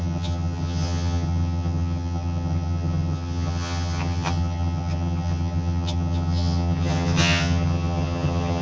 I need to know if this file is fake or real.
fake